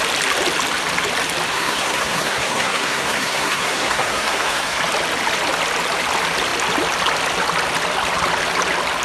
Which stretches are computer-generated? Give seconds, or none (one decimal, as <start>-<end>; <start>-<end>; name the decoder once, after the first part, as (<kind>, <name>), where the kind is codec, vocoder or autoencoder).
1.5-4.8 (codec, SNAC)